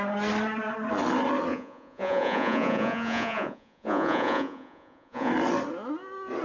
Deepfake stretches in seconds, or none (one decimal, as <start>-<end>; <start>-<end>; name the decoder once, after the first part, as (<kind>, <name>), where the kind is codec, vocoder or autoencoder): 1.5-5.3 (vocoder, Vocos)